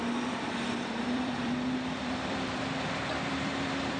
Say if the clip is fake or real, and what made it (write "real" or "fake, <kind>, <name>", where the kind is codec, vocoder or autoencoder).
fake, vocoder, BigVGAN v2